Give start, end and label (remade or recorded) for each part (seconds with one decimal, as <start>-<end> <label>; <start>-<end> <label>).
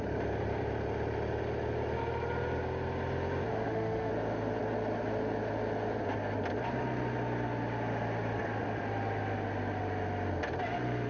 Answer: 0.0-3.5 recorded; 3.5-4.1 remade; 4.1-11.1 recorded